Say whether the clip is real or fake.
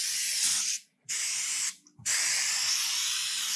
real